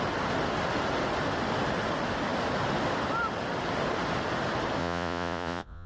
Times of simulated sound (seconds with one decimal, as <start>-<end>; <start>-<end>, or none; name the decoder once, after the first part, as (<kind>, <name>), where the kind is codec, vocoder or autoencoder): 4.8-5.9 (vocoder, Vocos)